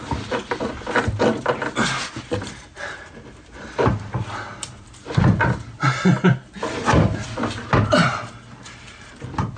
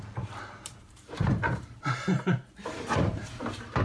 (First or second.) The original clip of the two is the first